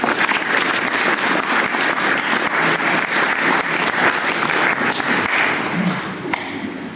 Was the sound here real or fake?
real